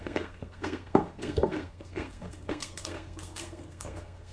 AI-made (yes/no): yes